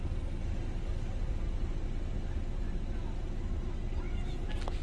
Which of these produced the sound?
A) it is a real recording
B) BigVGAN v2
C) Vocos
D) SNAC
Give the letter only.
A